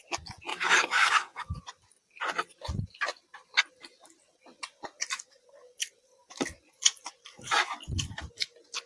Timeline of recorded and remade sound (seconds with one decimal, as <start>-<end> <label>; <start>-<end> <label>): 0.0-0.5 recorded; 0.5-1.6 remade; 1.6-8.9 recorded